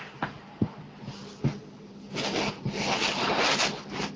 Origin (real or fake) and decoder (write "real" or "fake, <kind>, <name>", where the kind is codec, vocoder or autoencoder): real